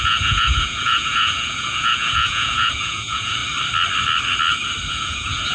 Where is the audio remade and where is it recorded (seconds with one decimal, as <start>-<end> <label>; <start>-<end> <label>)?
0.0-3.4 remade; 3.4-4.9 recorded; 4.9-5.5 remade